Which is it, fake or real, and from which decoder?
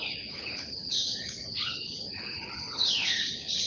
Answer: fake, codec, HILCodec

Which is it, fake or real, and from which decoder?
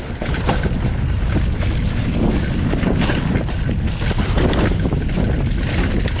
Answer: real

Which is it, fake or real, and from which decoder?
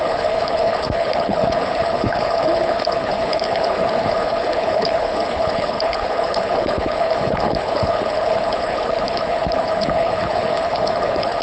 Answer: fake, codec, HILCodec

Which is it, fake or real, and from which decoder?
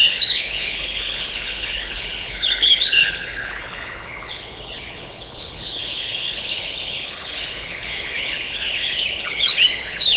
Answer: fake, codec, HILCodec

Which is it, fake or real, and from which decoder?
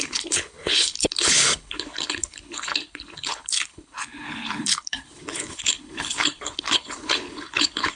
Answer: fake, codec, HILCodec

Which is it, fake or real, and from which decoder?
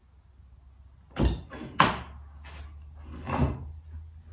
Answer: real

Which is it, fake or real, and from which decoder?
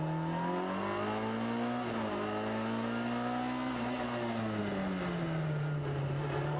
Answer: real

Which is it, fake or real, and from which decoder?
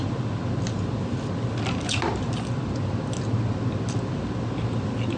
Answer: real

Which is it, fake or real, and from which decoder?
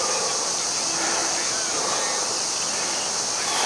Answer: real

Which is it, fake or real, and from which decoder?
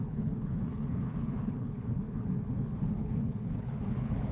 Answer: fake, codec, HILCodec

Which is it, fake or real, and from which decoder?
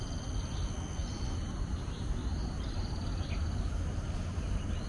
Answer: real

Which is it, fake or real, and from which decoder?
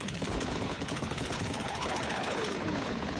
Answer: fake, codec, HILCodec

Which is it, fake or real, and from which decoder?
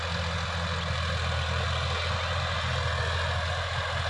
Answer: real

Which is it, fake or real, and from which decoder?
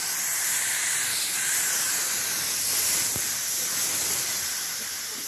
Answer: real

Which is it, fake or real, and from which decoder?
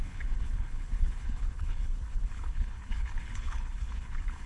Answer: fake, codec, HILCodec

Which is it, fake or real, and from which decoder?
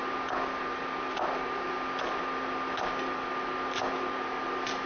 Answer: real